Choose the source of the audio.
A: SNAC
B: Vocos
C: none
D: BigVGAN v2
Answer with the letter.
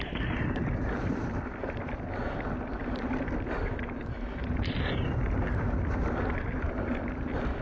C